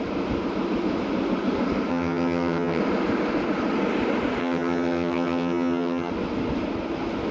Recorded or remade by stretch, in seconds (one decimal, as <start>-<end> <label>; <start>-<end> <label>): 0.0-1.9 recorded; 1.9-2.8 remade; 2.8-4.4 recorded; 4.4-6.1 remade; 6.1-7.3 recorded